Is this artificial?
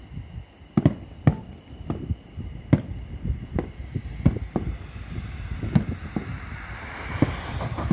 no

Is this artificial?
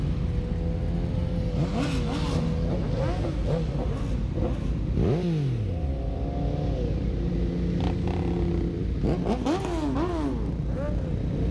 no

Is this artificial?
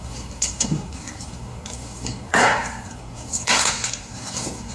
yes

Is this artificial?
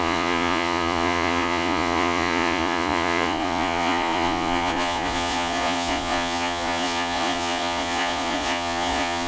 yes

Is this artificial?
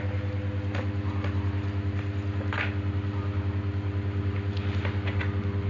no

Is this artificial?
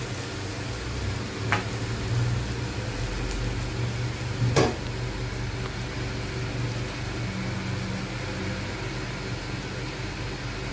no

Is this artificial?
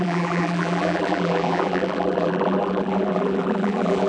yes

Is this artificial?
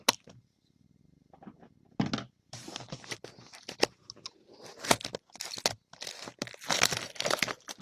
no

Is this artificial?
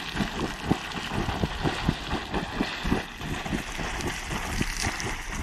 no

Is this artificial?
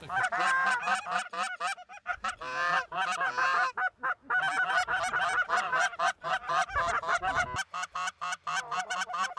no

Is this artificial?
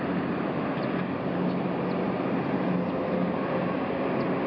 no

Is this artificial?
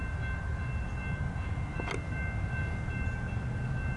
no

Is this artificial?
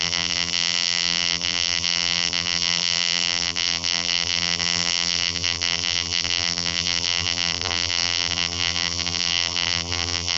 yes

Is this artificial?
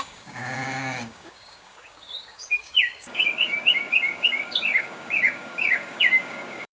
yes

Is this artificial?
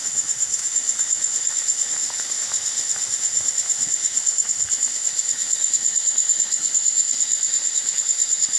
yes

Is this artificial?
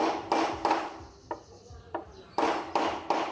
no